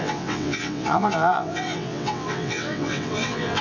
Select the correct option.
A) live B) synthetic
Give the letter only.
B